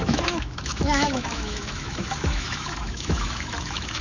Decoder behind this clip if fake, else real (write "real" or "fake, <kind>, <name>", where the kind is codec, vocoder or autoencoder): fake, autoencoder, DAC-VAE